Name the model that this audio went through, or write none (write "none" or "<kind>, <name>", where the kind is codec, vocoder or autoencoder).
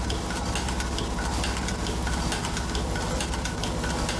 none